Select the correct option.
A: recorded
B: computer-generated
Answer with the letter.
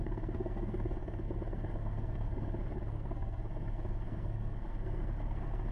B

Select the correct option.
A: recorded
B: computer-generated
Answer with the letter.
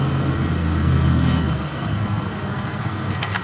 B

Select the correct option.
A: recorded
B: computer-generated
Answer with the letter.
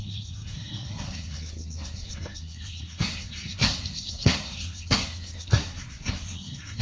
B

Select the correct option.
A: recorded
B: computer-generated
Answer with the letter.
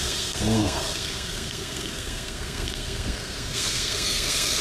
B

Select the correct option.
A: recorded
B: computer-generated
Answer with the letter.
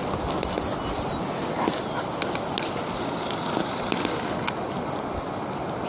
A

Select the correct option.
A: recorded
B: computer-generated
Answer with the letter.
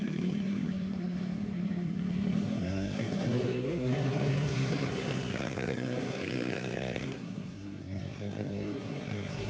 B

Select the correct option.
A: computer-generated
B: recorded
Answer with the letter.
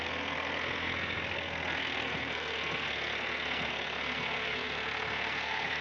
A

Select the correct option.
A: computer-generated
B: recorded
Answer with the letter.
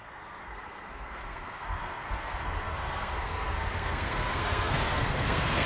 A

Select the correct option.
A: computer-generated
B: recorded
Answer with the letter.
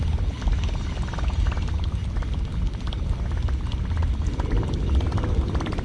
B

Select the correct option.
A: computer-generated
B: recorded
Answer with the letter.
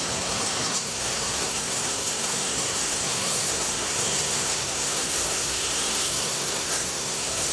A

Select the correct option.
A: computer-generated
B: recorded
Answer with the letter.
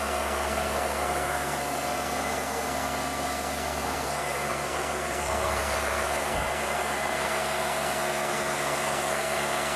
A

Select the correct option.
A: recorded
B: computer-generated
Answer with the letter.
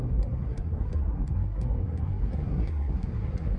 B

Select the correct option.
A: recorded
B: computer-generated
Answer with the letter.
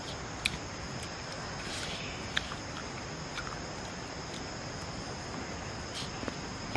A